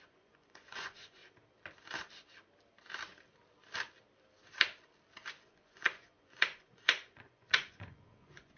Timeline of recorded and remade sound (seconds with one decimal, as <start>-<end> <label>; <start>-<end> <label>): 0.0-1.2 remade; 1.2-5.4 recorded; 5.4-8.6 remade